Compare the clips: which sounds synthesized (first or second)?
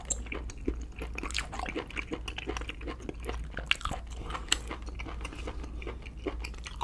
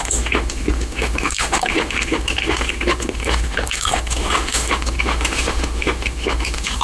second